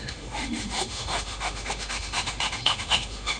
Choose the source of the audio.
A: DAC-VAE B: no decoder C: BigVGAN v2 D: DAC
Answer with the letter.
A